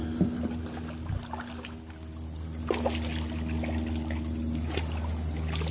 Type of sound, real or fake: real